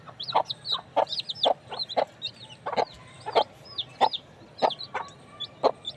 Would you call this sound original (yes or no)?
yes